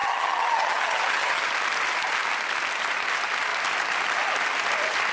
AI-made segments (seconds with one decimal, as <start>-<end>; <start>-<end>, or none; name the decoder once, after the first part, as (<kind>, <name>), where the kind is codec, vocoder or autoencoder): 0.0-1.5 (vocoder, HiFi-GAN)